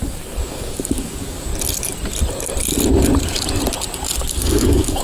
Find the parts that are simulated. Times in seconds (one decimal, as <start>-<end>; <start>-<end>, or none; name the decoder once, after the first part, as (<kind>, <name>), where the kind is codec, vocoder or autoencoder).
0.0-1.5 (codec, DAC); 4.3-5.0